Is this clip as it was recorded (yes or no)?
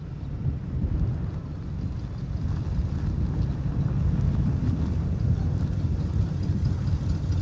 yes